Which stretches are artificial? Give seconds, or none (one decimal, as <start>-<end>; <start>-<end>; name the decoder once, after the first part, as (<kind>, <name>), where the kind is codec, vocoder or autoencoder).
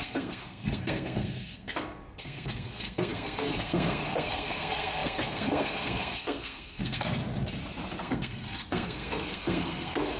0.0-7.2 (codec, SNAC); 8.0-10.2